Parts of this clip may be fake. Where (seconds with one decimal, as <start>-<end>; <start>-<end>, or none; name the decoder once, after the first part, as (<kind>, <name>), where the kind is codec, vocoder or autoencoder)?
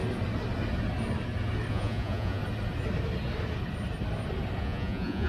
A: 1.7-2.4 (vocoder, Vocos); 4.6-5.3